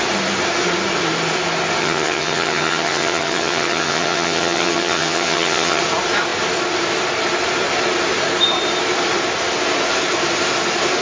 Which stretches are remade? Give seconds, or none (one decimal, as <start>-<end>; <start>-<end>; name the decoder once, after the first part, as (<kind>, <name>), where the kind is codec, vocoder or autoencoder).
1.8-5.8 (vocoder, HiFi-GAN)